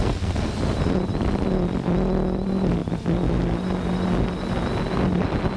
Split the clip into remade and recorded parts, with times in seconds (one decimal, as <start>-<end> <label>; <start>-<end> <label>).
0.0-0.5 remade; 0.5-5.6 recorded